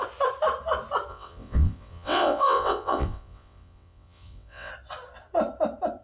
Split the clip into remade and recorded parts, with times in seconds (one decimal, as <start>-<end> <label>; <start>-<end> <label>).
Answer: 0.0-1.1 recorded; 1.1-4.7 remade; 4.7-6.0 recorded